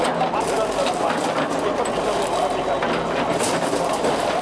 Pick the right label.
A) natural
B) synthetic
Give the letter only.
A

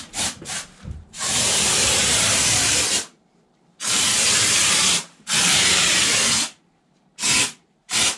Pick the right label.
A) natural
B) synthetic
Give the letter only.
B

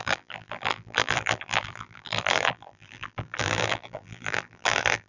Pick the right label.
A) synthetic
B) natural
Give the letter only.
A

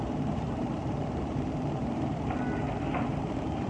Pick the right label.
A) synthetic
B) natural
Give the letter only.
A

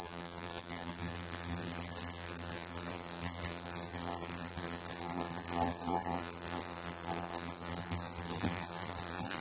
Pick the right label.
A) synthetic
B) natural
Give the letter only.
A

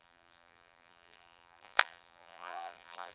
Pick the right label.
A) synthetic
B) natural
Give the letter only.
A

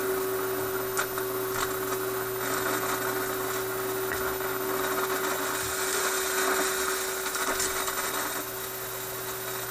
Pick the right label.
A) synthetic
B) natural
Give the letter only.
B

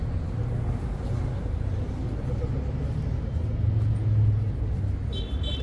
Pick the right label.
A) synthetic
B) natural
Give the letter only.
B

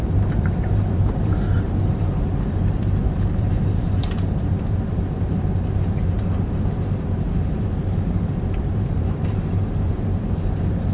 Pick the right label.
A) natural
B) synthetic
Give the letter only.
B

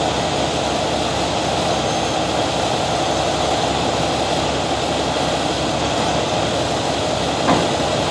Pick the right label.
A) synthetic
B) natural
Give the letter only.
B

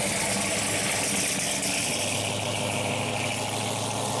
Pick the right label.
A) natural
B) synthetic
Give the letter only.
A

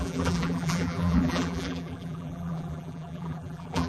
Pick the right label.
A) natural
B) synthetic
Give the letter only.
B